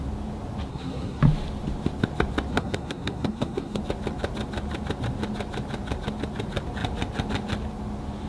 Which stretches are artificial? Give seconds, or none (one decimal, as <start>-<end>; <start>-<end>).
0.7-1.2; 2.5-3.8